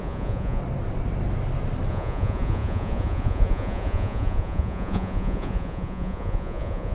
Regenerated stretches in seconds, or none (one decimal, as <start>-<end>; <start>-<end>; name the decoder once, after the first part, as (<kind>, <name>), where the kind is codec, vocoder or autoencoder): 0.0-0.6 (vocoder, Vocos); 1.9-6.9